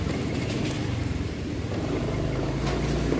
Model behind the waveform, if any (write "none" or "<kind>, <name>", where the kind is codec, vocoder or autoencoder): vocoder, BigVGAN v2